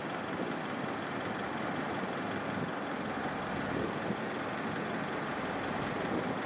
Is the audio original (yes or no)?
yes